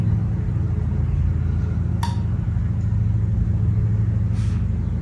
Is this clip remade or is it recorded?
recorded